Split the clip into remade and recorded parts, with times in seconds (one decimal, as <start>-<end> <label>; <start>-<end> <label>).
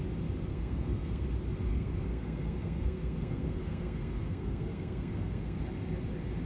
0.0-0.5 recorded; 0.5-1.2 remade; 1.2-1.7 recorded; 1.7-5.6 remade; 5.6-6.5 recorded